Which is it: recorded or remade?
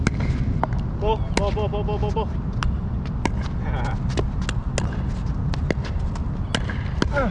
recorded